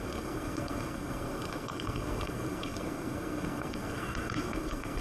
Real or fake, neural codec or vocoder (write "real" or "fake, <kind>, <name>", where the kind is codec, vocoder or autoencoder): fake, codec, SNAC